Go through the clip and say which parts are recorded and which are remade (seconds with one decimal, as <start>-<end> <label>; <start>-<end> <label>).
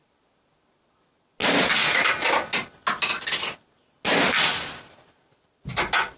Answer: 0.0-6.2 recorded